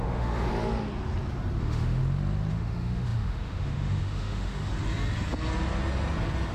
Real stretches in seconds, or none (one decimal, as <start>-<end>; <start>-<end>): 0.5-1.6; 2.0-2.5; 4.7-6.5